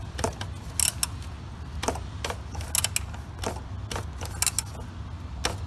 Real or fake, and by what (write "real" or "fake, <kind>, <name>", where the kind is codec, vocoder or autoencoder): real